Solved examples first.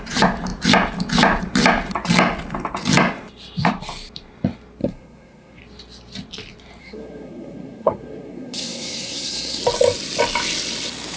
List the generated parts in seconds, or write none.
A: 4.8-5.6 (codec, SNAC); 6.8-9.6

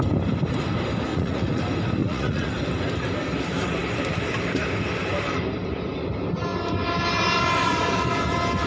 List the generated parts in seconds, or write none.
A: 1.1-1.6 (vocoder, Vocos); 2.0-2.5